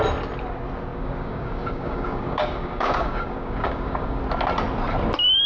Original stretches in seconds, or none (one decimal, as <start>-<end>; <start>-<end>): 0.0-0.9; 4.2-5.5